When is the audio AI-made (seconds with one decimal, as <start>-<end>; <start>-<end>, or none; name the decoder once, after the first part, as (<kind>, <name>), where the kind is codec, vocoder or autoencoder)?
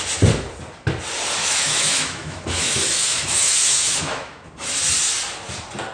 1.4-4.5 (autoencoder, DAC-VAE)